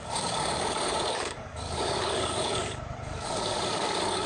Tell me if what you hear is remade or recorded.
remade